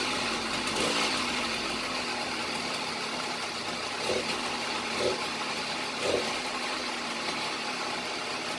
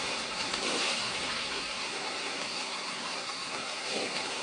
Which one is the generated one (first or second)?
second